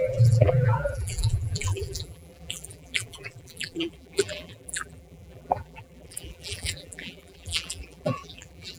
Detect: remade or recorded remade